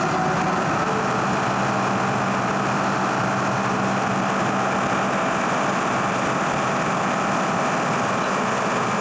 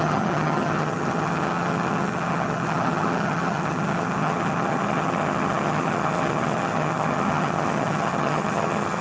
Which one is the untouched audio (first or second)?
first